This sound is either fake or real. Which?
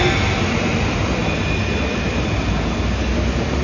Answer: real